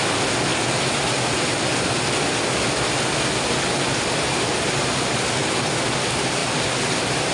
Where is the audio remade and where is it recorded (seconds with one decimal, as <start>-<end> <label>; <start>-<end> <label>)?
0.0-7.3 recorded